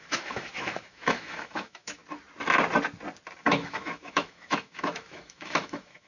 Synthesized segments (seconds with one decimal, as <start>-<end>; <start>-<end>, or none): 0.0-2.0; 3.4-6.1